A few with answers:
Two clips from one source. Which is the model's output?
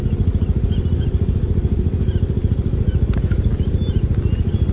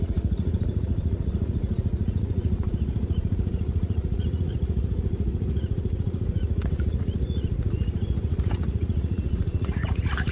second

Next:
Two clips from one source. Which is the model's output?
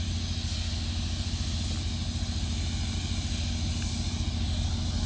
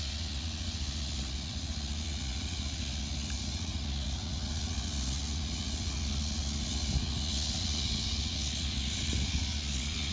second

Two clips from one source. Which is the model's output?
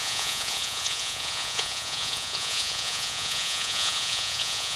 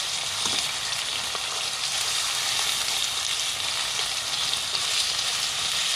first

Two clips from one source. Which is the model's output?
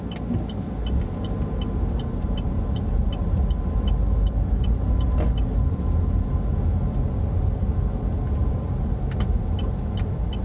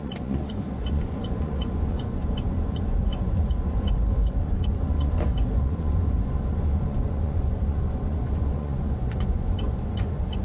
second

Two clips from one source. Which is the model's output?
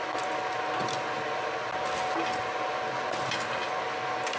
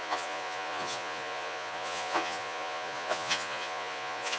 second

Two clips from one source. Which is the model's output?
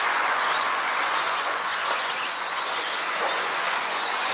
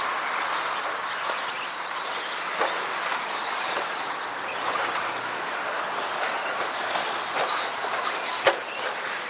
first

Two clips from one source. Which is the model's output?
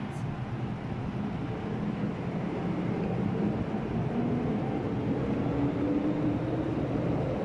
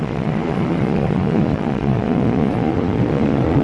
second